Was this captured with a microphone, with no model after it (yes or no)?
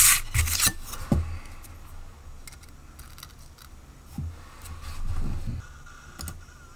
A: yes